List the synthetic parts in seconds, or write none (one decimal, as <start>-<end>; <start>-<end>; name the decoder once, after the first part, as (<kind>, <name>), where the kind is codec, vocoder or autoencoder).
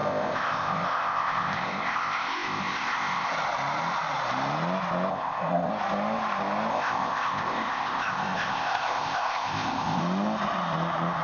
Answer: 0.0-3.3 (codec, ZipCodec); 5.1-5.7; 6.7-10.0